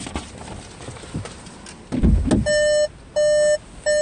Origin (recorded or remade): recorded